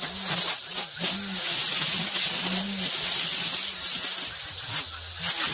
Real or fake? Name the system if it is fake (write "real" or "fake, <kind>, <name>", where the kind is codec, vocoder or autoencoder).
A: real